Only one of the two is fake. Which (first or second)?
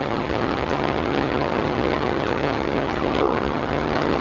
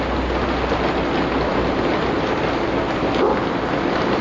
first